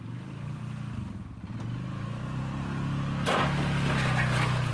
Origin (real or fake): real